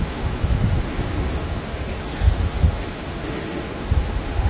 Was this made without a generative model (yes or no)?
no